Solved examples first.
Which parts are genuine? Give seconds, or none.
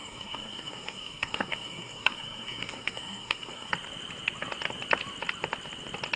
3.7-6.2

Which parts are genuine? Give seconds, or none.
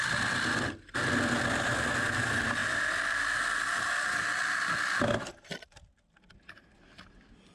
0.0-7.5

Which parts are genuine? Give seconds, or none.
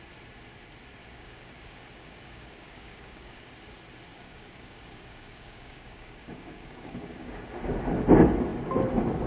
0.0-1.0; 3.5-4.1; 7.5-9.3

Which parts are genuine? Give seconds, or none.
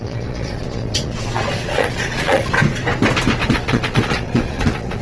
2.5-3.4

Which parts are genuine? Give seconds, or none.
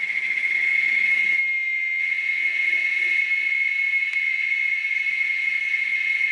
1.4-2.0; 3.2-5.1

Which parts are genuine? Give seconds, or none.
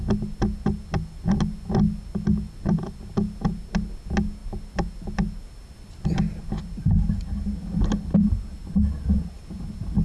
0.0-10.0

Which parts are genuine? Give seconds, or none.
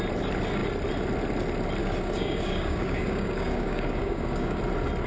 0.0-1.8; 4.6-5.1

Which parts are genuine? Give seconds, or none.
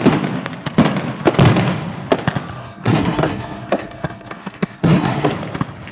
0.0-2.6; 5.3-5.9